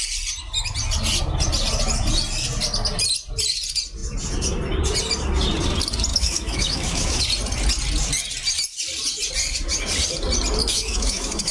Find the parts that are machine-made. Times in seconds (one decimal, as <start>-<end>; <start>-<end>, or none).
6.1-7.2; 10.6-11.5